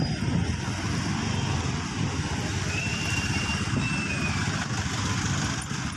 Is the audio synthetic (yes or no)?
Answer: no